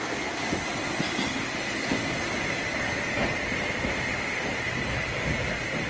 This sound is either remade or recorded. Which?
recorded